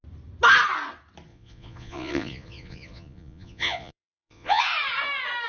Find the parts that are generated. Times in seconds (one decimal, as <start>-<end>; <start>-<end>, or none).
1.3-4.6